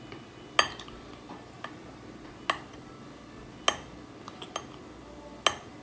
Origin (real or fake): real